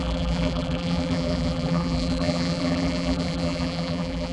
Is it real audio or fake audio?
fake